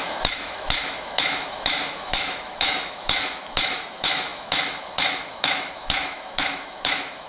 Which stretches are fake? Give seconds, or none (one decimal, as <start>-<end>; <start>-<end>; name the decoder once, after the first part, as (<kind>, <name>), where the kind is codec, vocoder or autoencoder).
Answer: 0.0-7.3 (autoencoder, DAC-VAE)